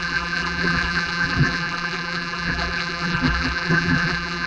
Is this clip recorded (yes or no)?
no